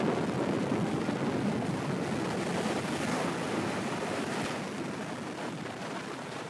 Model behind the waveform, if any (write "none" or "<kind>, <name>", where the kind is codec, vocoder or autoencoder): none